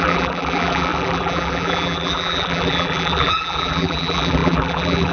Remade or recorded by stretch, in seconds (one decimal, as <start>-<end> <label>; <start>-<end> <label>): 0.0-5.1 remade